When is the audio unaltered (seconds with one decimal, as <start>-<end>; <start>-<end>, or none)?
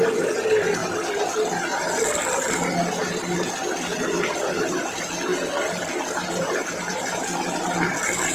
0.0-8.3